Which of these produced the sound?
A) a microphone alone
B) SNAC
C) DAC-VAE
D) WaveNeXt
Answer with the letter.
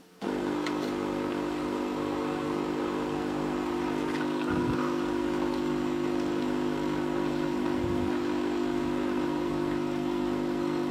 B